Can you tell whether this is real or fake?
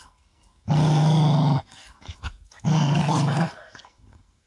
fake